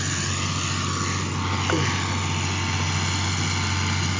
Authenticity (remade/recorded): recorded